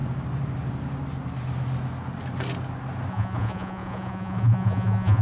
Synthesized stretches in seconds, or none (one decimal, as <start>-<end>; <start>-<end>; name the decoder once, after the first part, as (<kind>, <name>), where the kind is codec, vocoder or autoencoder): 3.1-5.2 (vocoder, Vocos)